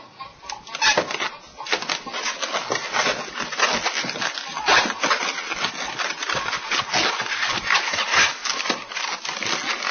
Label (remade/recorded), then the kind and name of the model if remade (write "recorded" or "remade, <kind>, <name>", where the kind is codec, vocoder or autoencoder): recorded